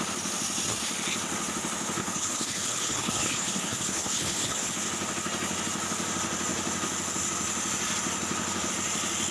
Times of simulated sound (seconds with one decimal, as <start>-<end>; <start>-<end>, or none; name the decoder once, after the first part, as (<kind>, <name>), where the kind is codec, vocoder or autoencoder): 2.0-4.7 (codec, HILCodec)